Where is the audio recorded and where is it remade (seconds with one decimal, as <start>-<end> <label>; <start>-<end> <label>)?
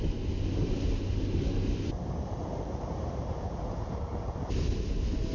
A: 0.0-0.6 recorded; 0.6-3.8 remade; 3.8-5.3 recorded